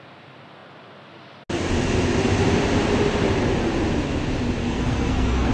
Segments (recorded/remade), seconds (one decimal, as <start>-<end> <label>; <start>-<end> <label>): 0.0-4.6 recorded; 4.6-5.5 remade